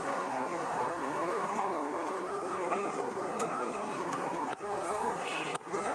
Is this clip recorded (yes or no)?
no